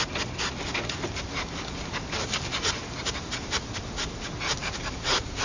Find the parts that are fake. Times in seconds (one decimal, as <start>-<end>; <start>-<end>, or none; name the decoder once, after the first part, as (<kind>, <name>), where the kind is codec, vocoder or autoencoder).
2.8-3.7 (vocoder, BigVGAN v2); 4.6-5.4